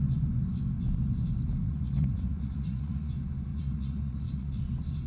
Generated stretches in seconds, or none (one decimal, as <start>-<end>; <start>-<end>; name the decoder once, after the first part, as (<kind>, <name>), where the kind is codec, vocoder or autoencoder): 1.6-3.1 (vocoder, Vocos); 3.5-4.6